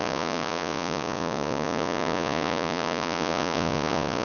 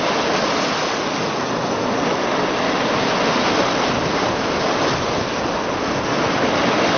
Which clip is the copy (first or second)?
first